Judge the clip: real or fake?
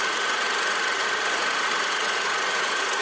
fake